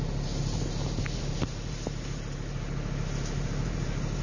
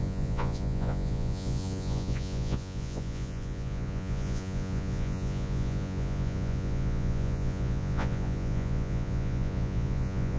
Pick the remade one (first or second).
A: second